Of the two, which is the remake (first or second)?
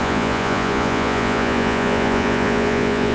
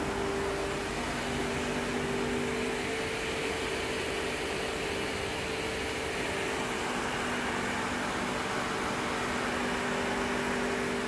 first